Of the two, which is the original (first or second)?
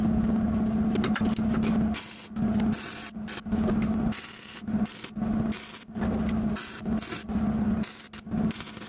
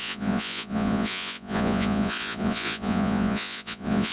first